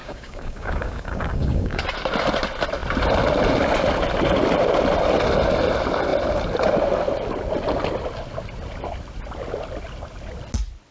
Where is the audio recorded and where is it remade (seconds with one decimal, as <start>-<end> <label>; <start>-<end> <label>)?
0.0-1.8 remade; 1.8-10.9 recorded